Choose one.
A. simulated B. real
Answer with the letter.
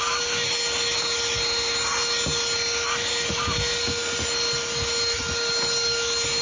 B